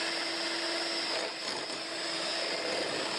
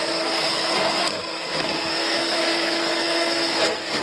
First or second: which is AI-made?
second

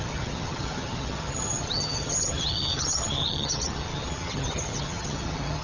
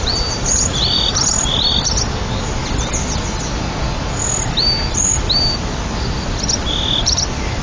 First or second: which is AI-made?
first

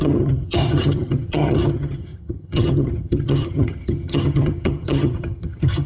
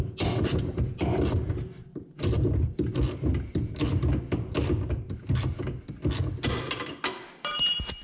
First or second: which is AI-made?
first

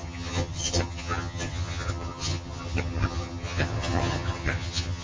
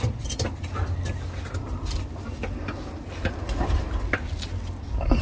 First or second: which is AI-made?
first